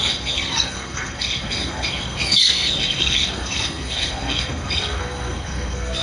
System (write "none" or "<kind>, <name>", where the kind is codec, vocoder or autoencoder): codec, SNAC